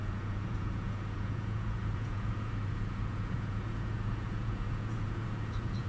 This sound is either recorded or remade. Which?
remade